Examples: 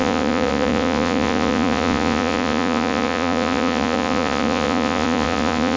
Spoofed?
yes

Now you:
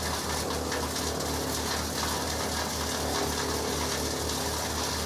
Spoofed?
no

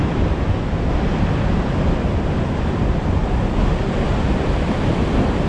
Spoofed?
no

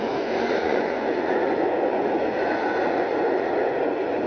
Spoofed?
yes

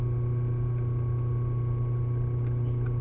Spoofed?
no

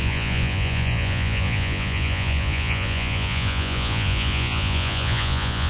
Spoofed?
yes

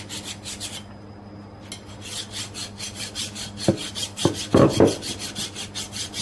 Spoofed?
no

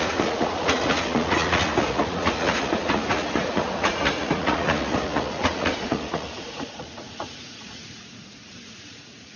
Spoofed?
yes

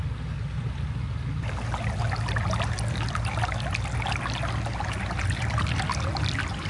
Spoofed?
no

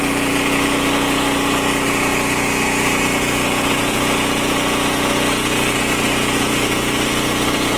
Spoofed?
yes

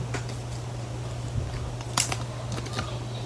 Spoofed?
no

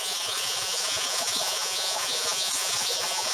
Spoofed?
yes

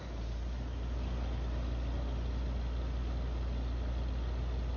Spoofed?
no